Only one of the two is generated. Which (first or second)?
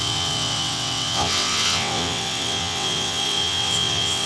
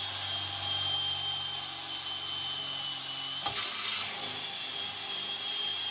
first